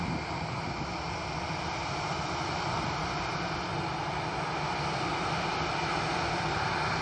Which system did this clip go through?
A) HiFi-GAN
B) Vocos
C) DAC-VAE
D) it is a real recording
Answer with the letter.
D